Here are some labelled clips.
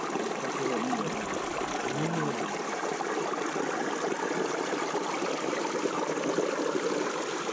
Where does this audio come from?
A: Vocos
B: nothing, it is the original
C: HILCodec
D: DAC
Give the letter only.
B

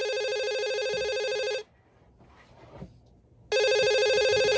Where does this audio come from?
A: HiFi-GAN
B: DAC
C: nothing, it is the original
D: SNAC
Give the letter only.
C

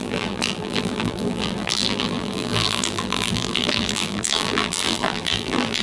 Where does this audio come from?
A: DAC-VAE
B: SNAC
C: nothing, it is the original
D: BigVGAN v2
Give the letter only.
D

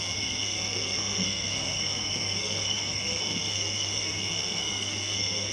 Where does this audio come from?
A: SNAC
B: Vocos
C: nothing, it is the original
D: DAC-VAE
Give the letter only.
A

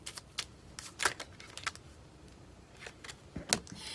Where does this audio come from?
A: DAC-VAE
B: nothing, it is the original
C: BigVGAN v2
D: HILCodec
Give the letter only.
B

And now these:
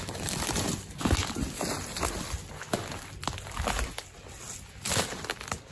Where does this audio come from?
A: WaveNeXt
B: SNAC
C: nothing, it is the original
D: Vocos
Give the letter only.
C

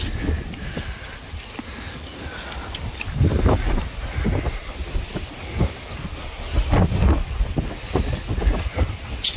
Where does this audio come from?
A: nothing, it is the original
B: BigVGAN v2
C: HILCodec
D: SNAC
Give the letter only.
A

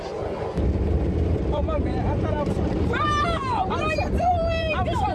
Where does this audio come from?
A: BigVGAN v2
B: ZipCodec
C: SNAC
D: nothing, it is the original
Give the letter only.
A